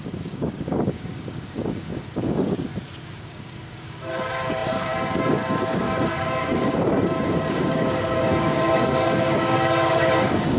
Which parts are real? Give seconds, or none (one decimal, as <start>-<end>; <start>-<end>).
2.7-3.2

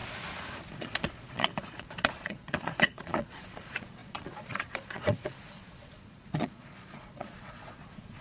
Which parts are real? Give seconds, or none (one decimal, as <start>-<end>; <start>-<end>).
0.0-0.7

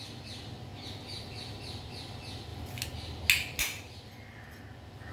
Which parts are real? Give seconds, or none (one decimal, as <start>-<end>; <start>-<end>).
0.0-5.1

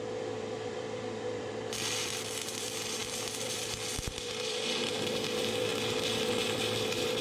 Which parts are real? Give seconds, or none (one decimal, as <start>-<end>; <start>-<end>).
5.7-6.3

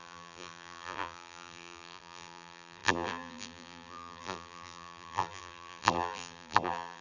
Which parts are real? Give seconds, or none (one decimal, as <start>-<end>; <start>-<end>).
none